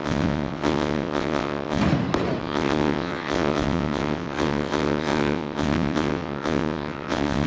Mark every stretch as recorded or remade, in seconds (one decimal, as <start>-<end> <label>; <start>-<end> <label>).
0.0-1.8 remade; 1.8-2.4 recorded; 2.4-7.5 remade